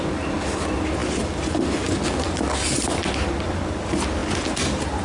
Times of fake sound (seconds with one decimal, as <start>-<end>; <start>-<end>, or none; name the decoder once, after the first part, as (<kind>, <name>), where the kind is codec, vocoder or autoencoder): none